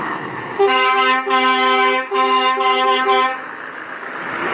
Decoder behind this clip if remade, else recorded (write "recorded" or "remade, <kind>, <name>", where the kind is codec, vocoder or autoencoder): remade, autoencoder, DAC-VAE